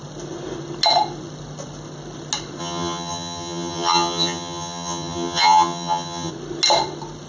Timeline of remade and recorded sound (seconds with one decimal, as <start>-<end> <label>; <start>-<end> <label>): 0.0-2.6 recorded; 2.6-6.3 remade; 6.3-7.3 recorded